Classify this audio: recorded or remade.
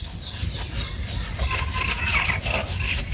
recorded